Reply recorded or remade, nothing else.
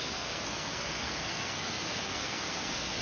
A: remade